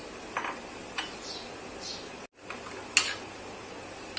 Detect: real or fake real